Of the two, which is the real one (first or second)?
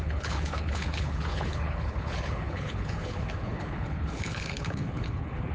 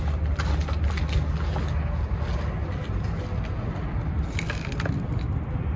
second